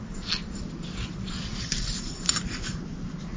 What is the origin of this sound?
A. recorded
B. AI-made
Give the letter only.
A